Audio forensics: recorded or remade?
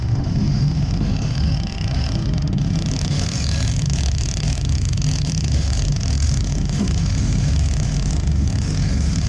remade